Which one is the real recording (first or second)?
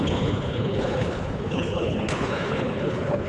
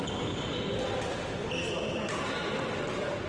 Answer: second